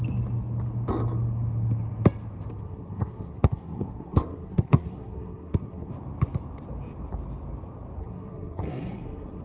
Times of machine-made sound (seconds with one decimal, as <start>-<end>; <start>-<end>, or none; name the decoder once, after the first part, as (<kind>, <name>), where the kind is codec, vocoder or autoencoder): 2.5-5.9 (codec, SNAC); 8.0-9.4